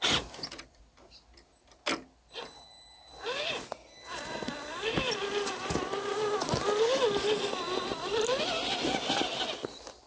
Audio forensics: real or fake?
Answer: real